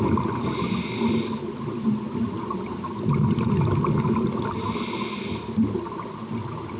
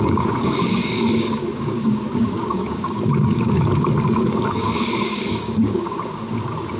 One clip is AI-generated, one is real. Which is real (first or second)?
first